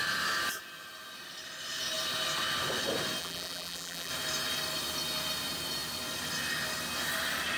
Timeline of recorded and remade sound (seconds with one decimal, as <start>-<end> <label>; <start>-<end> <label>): 0.0-3.2 recorded; 3.2-4.1 remade; 4.1-7.6 recorded